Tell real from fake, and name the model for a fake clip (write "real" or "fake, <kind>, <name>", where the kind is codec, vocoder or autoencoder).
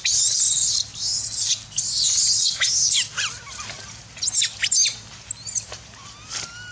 real